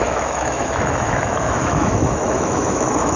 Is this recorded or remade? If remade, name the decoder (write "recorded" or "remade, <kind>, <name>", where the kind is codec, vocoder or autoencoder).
remade, autoencoder, DAC-VAE